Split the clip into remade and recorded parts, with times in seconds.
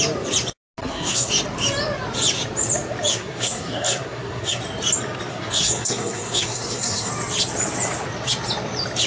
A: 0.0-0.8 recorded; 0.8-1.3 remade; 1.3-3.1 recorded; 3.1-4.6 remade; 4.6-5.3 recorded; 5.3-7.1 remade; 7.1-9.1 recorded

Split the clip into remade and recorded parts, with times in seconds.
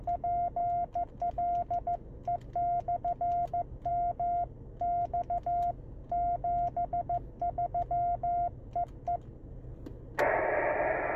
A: 0.0-11.2 recorded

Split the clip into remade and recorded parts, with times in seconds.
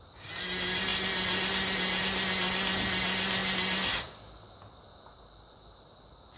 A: 0.0-6.4 recorded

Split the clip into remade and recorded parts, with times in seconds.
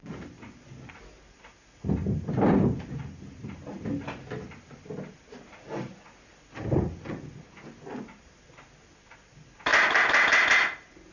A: 0.0-11.1 recorded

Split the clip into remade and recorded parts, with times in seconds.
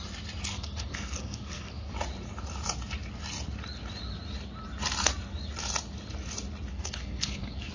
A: 0.0-0.5 recorded; 0.5-1.9 remade; 1.9-6.7 recorded; 6.7-7.7 remade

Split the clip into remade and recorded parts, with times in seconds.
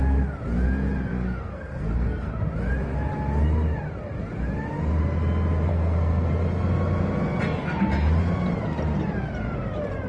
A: 0.0-1.1 recorded; 1.1-2.4 remade; 2.4-5.7 recorded; 5.7-6.3 remade; 6.3-10.1 recorded